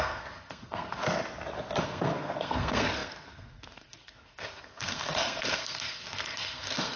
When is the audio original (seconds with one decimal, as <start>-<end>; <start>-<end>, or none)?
1.0-1.8

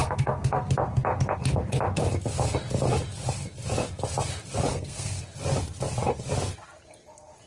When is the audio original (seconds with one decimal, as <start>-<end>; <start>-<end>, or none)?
0.7-4.7; 5.2-7.5